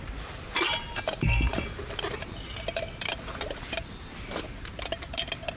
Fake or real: real